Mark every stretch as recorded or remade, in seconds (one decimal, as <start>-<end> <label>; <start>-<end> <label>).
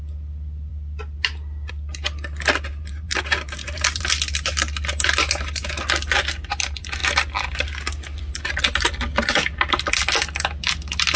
0.0-2.7 recorded; 2.7-4.0 remade; 4.0-11.2 recorded